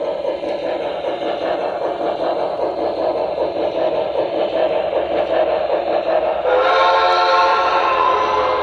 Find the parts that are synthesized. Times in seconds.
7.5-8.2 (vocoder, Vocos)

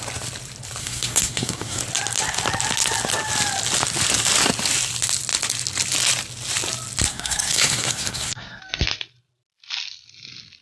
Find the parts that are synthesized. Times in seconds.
0.8-1.8 (codec, SNAC); 7.1-8.6

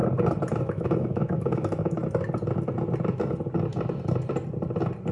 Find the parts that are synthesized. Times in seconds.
0.6-2.0 (autoencoder, DAC-VAE)

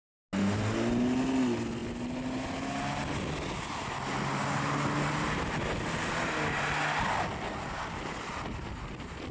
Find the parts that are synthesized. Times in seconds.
none

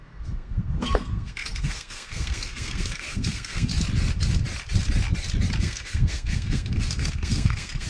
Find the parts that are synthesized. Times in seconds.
0.0-3.7 (codec, SNAC); 5.6-7.9

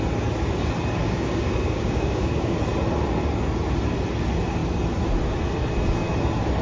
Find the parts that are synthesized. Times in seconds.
1.0-2.6 (codec, DAC)